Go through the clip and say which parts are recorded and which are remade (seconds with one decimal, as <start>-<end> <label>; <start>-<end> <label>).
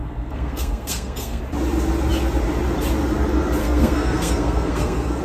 0.0-1.4 remade; 1.4-3.6 recorded; 3.6-5.2 remade